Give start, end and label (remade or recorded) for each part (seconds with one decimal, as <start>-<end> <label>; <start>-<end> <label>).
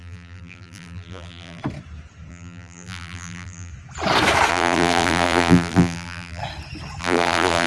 0.0-1.6 remade; 1.6-2.3 recorded; 2.3-3.7 remade; 3.7-4.5 recorded; 4.5-6.4 remade; 6.4-7.0 recorded; 7.0-7.7 remade